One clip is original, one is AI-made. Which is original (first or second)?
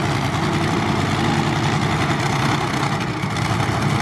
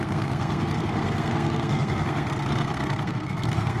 first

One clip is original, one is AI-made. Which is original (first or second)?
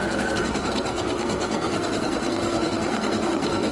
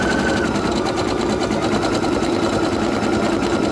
second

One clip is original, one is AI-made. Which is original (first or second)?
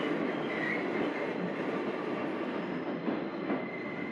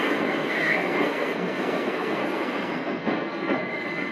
first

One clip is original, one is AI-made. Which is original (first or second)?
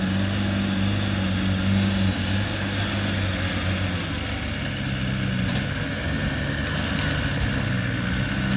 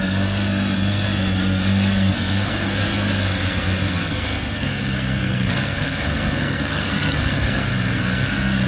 first